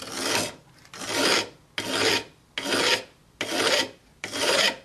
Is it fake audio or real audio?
real